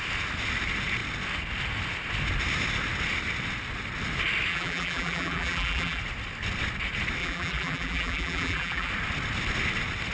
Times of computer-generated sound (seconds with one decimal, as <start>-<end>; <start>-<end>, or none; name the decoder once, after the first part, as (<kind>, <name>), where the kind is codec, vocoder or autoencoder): 4.5-6.0 (vocoder, BigVGAN v2); 7.2-8.9